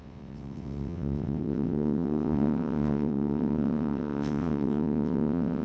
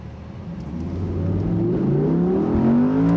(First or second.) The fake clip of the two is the first